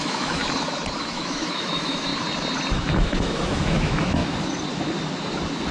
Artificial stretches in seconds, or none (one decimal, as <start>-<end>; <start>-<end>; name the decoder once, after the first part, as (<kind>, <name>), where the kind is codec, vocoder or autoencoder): 0.0-0.4 (autoencoder, DAC-VAE); 1.0-2.1; 2.7-4.2